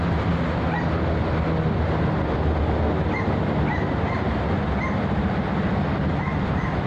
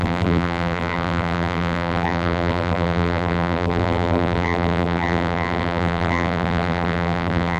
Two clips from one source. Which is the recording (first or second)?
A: first